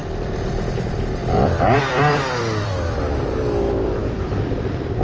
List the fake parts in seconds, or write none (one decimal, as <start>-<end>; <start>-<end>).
1.2-2.7; 4.0-5.0